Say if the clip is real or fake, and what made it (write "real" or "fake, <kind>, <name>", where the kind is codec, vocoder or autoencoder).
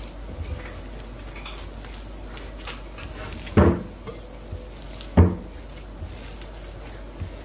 real